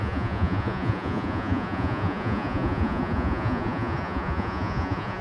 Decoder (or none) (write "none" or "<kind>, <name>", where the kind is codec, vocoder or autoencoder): vocoder, Vocos